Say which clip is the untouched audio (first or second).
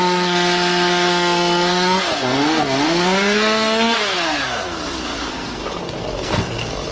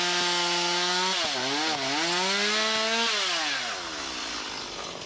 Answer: second